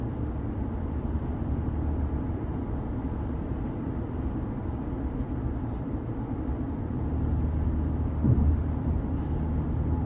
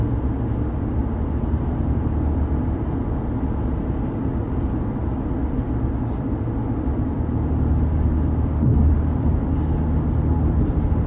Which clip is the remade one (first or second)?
first